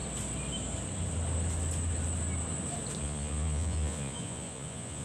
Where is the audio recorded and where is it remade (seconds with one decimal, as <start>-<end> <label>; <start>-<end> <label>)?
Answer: 0.0-3.0 recorded; 3.0-5.0 remade